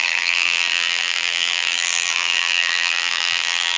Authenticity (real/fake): fake